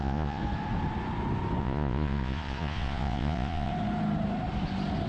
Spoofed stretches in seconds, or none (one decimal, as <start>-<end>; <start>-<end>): 0.0-0.4; 1.6-3.7